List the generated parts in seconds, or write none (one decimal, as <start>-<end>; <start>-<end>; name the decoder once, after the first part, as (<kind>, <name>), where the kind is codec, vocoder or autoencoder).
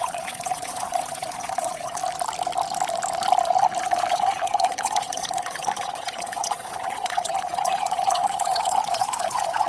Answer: 0.0-2.0 (vocoder, Vocos); 3.8-9.7